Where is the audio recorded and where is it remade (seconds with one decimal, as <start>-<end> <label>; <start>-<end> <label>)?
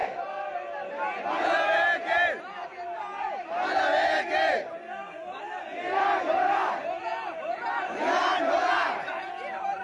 0.0-9.8 recorded